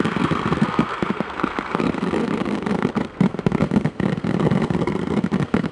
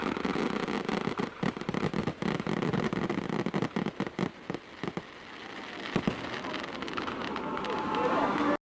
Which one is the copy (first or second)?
first